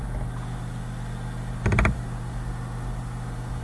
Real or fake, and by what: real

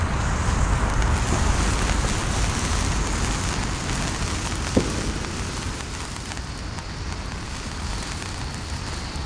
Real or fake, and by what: real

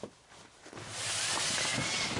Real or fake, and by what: real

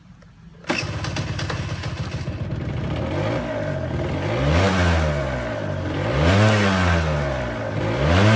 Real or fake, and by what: real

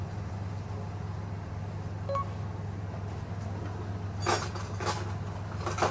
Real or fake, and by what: real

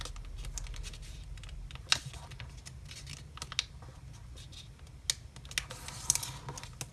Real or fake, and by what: real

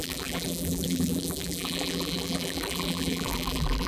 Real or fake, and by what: fake, vocoder, BigVGAN v2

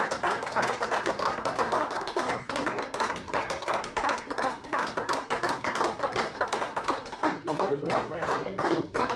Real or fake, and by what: fake, codec, SNAC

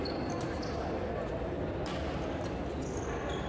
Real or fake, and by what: real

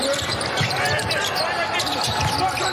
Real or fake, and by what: real